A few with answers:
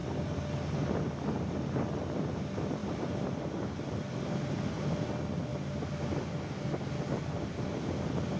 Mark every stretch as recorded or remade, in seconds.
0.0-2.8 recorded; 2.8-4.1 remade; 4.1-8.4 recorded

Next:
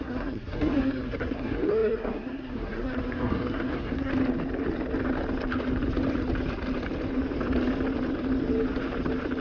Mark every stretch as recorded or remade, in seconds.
0.0-4.1 remade; 4.1-9.4 recorded

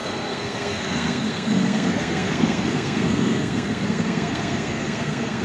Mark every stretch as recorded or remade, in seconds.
0.0-5.4 remade